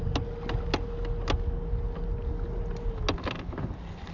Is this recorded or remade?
recorded